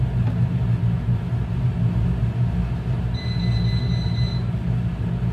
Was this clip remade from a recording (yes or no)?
no